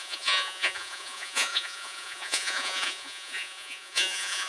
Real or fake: fake